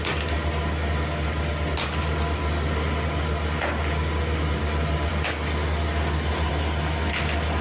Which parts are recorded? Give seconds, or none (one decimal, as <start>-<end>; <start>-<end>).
0.0-7.6